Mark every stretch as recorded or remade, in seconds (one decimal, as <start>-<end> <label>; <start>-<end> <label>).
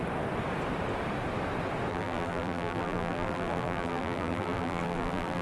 0.0-1.9 recorded; 1.9-5.4 remade